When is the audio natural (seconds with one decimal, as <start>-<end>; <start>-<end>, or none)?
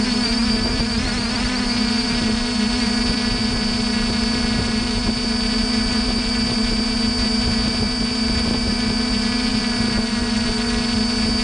none